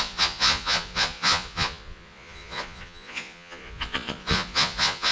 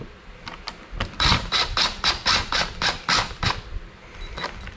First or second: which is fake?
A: first